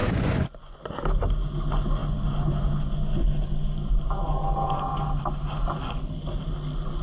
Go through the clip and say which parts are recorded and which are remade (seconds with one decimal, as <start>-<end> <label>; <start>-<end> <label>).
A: 0.0-1.0 remade; 1.0-7.0 recorded